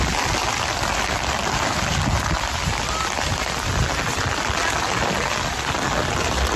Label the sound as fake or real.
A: real